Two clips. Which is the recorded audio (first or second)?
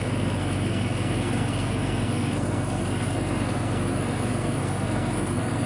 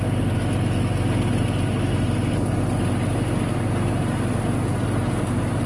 second